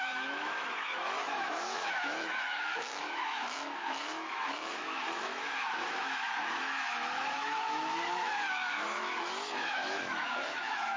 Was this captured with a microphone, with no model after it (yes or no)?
no